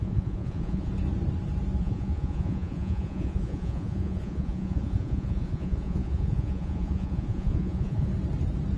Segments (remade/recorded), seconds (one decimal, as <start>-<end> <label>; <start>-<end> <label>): 0.0-0.9 remade; 0.9-1.8 recorded; 1.8-8.1 remade; 8.1-8.8 recorded